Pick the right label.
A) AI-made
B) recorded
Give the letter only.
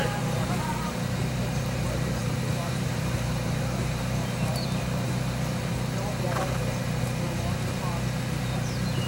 A